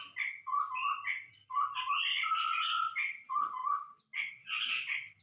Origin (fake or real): real